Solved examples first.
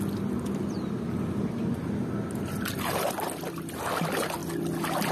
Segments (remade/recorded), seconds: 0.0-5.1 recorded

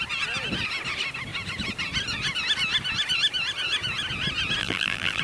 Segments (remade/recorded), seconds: 0.0-4.6 recorded; 4.6-5.2 remade

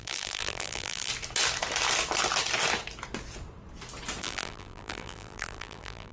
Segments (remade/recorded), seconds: 0.0-1.1 remade; 1.1-4.2 recorded; 4.2-6.1 remade

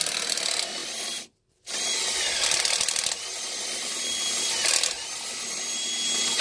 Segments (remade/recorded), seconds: 0.0-0.8 recorded; 0.8-4.6 remade; 4.6-6.4 recorded

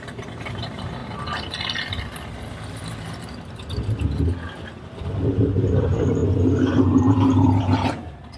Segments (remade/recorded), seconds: 0.0-1.0 remade; 1.0-5.8 recorded; 5.8-6.2 remade; 6.2-7.0 recorded; 7.0-8.4 remade

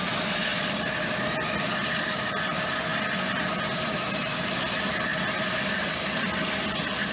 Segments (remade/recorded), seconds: 0.0-0.5 recorded; 0.5-2.4 remade; 2.4-2.9 recorded; 2.9-4.2 remade; 4.2-5.1 recorded; 5.1-7.1 remade

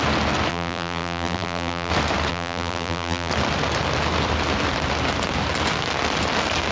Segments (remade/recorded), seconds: 0.0-0.5 recorded; 0.5-1.9 remade; 1.9-2.3 recorded; 2.3-3.3 remade; 3.3-6.7 recorded